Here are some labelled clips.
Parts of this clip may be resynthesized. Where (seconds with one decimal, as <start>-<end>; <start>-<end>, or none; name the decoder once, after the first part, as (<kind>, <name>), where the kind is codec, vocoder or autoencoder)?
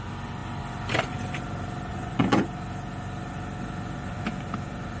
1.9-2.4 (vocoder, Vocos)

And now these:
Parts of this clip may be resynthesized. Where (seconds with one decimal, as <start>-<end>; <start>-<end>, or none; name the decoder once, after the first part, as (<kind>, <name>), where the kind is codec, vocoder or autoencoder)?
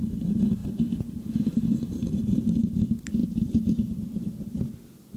1.5-2.4 (vocoder, BigVGAN v2); 3.2-4.0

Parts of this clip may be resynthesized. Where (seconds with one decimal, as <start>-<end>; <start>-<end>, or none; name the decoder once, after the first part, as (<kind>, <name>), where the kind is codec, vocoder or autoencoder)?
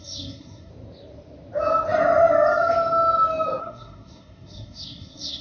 0.0-0.7 (codec, SNAC); 3.6-5.4